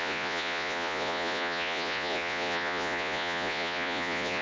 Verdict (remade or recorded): remade